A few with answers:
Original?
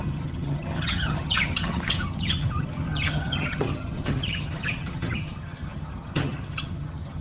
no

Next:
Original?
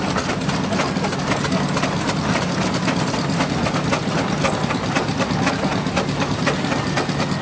yes